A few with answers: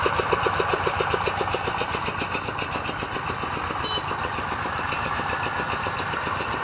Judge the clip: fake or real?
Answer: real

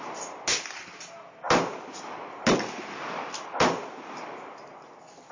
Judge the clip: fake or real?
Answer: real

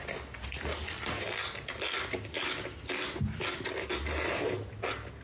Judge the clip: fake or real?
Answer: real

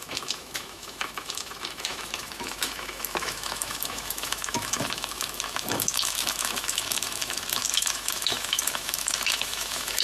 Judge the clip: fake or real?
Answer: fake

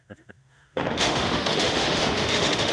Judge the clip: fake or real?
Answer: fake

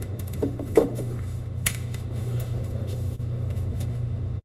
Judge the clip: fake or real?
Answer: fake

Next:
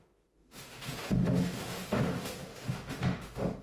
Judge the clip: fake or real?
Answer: fake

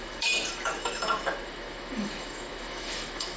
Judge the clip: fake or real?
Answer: fake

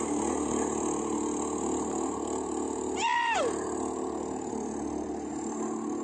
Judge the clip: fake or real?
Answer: real